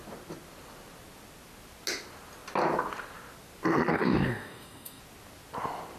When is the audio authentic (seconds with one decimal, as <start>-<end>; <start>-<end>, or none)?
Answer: 0.0-3.9; 5.0-6.0